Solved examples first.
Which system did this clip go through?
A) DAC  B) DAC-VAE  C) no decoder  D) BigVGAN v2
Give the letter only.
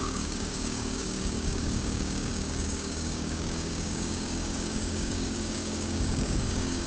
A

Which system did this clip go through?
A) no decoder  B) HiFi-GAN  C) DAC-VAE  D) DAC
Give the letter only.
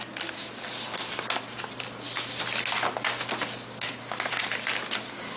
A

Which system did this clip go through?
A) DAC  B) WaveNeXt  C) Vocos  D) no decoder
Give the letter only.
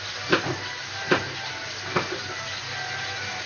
D